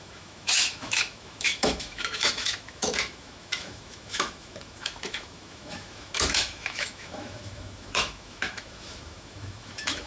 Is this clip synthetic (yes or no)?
yes